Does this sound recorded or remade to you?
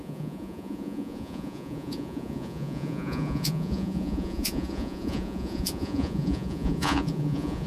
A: remade